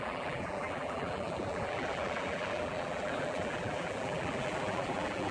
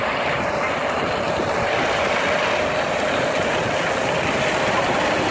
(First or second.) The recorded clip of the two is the second